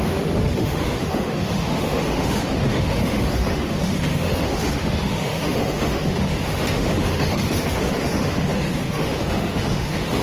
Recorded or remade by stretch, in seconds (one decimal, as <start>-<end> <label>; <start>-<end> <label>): 0.0-10.2 remade